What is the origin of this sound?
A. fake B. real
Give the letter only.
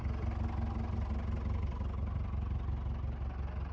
B